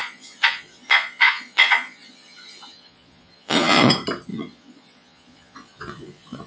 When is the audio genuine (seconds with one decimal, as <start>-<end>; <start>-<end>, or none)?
3.9-4.3